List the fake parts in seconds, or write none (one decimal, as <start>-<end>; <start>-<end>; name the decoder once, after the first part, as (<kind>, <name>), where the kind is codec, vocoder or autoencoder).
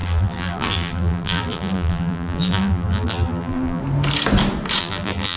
0.0-3.8 (vocoder, BigVGAN v2); 4.8-5.4